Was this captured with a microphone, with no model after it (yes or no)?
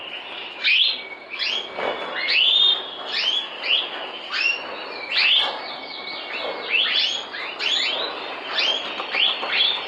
yes